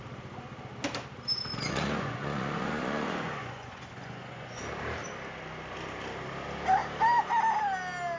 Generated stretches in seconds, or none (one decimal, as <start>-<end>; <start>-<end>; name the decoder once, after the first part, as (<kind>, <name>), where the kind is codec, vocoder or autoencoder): 1.5-4.6 (vocoder, Vocos)